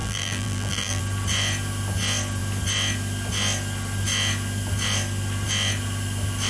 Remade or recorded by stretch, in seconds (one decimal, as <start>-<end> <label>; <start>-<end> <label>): 0.0-1.0 remade; 1.0-6.5 recorded